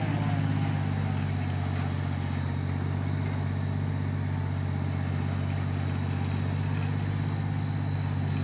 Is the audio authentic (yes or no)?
yes